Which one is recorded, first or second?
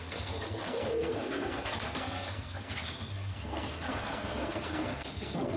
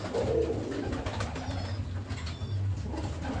second